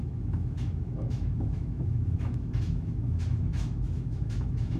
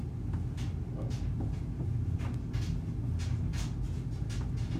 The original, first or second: second